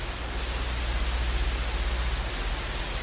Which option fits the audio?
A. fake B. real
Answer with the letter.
B